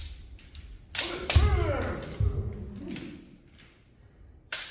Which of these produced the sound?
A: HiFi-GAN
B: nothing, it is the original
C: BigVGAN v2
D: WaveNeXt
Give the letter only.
B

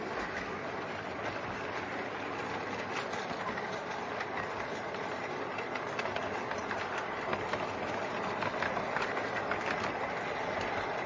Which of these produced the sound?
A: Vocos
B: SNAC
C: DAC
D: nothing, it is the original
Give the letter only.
D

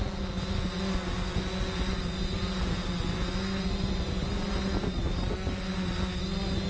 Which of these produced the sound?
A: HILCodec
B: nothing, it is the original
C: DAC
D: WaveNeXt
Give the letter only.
B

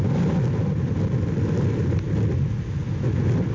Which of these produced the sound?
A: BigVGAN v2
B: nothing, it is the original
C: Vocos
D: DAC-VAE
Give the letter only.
B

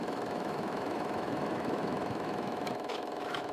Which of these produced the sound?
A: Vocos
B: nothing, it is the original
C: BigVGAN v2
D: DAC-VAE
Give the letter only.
D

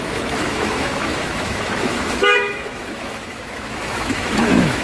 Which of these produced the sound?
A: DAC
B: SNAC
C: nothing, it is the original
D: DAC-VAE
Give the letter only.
D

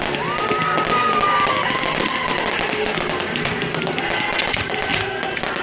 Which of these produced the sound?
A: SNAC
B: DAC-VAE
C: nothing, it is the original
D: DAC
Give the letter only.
C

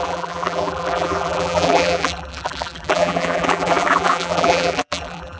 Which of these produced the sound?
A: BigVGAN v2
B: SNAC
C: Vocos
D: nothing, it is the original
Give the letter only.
A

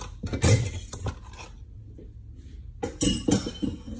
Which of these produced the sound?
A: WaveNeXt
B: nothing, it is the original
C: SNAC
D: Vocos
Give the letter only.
B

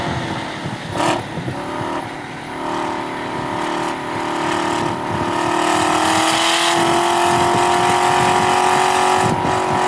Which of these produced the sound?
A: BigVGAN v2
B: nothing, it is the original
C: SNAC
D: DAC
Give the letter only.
B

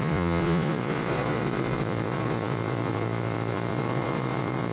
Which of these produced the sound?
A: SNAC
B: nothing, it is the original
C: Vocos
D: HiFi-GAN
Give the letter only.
C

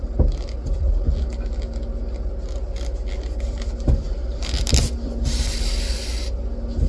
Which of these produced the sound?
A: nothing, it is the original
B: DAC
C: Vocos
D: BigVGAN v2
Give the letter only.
A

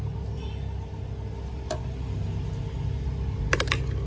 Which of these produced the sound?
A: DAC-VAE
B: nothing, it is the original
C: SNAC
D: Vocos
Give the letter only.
B